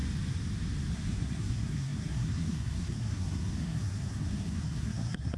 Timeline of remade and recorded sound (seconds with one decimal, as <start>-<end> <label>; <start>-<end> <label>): 0.0-0.9 recorded; 0.9-5.4 remade